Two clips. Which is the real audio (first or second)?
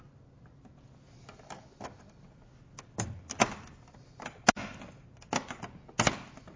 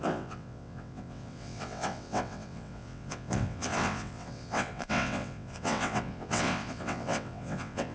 first